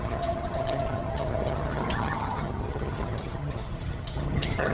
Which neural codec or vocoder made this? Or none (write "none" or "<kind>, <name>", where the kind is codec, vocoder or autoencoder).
vocoder, HiFi-GAN